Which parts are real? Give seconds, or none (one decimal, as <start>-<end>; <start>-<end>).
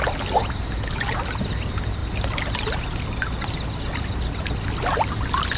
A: 0.0-5.6